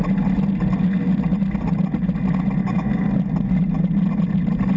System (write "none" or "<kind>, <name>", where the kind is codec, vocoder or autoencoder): none